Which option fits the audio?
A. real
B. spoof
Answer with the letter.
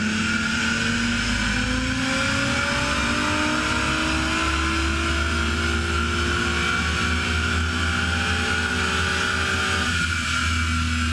A